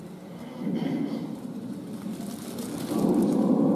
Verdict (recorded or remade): remade